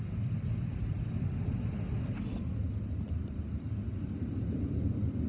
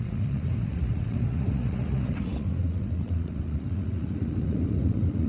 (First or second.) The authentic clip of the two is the first